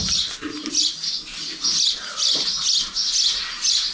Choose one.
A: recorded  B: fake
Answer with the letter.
A